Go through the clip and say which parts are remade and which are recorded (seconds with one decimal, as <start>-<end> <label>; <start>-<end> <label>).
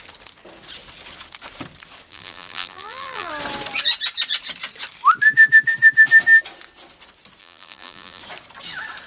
0.0-2.1 recorded; 2.1-3.3 remade; 3.3-7.4 recorded; 7.4-8.2 remade; 8.2-9.1 recorded